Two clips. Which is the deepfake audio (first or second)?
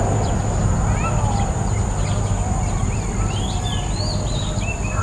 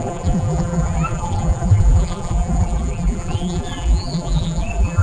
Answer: second